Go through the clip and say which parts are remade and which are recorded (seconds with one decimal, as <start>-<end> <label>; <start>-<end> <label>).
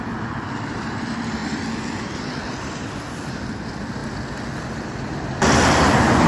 0.0-4.0 remade; 4.0-4.6 recorded; 4.6-6.3 remade